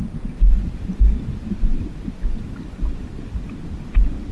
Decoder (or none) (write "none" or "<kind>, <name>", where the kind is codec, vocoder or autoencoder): none